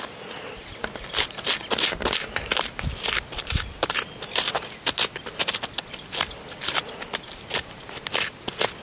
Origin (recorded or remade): recorded